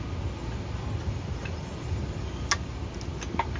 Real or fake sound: real